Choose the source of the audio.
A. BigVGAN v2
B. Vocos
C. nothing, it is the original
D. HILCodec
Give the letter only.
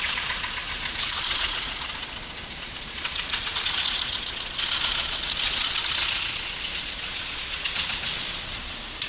B